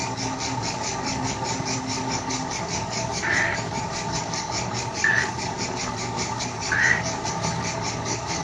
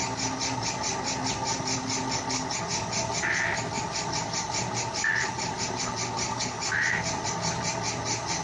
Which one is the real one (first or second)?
second